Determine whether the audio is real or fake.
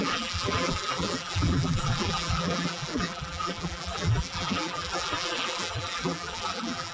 fake